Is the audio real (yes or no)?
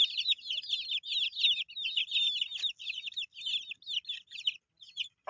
yes